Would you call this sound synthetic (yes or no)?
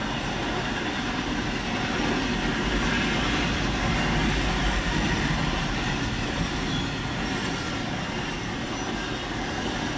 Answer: no